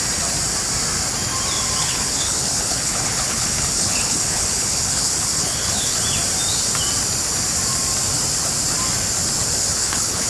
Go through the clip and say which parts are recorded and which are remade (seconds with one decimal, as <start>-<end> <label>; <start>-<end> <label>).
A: 0.0-1.8 recorded; 1.8-6.0 remade; 6.0-9.6 recorded; 9.6-10.3 remade